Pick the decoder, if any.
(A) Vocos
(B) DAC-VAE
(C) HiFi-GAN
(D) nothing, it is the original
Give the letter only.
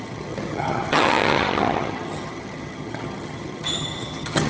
C